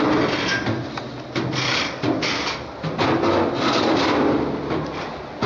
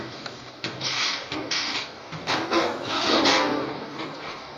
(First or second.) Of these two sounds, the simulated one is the second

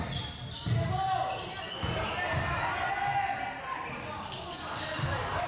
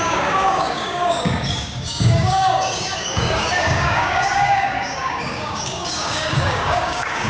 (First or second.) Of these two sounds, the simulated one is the second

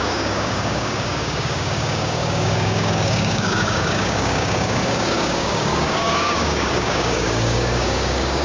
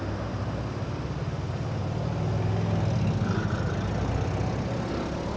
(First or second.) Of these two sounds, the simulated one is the first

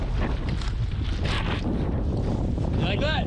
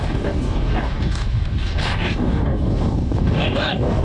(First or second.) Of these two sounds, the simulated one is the second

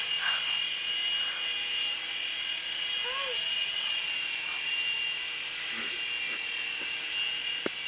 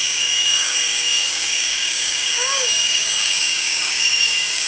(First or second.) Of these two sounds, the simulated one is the second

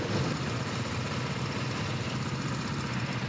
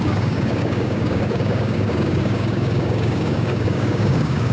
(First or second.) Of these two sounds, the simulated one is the second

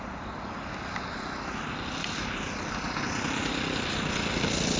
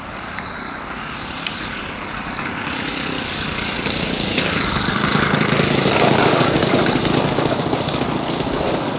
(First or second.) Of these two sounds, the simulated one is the second